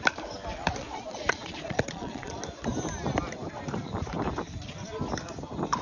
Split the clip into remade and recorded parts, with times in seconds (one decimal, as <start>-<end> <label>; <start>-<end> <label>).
0.0-0.8 recorded; 0.8-2.3 remade; 2.3-5.8 recorded